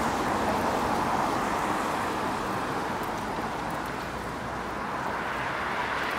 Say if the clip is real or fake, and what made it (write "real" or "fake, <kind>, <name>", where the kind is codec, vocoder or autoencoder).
real